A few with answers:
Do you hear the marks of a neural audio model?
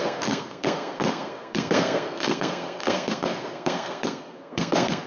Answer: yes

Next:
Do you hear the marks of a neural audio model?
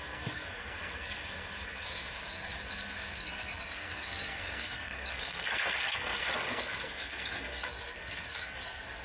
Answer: yes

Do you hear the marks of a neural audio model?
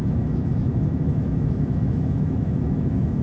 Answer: yes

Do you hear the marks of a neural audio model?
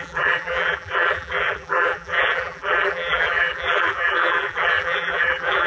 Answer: yes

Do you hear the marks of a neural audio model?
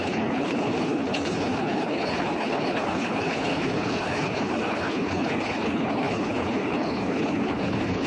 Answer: yes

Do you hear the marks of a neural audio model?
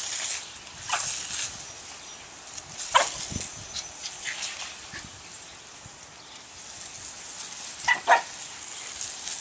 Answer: no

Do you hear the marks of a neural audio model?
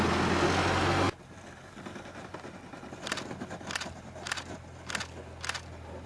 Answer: no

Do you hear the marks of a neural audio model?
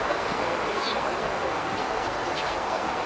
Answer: yes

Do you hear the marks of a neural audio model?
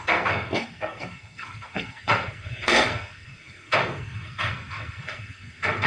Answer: yes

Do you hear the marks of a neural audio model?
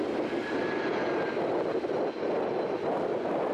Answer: no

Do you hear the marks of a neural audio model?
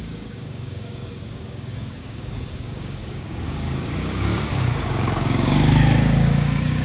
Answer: yes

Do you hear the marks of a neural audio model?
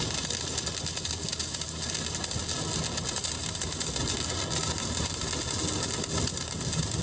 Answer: no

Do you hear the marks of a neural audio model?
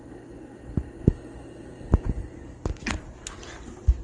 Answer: no